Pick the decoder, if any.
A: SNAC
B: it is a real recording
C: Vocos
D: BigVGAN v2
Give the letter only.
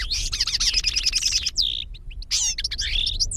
B